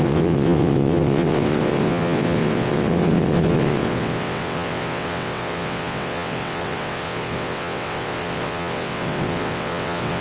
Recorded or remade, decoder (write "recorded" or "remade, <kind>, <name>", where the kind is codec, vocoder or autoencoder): remade, vocoder, WaveNeXt